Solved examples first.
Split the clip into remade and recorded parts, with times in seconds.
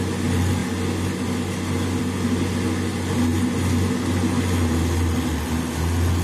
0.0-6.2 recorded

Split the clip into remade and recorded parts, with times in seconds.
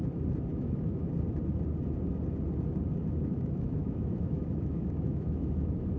0.0-0.5 recorded; 0.5-1.1 remade; 1.1-3.0 recorded; 3.0-6.0 remade